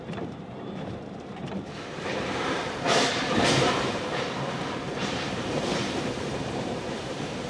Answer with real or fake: fake